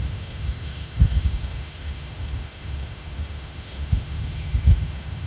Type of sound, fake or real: fake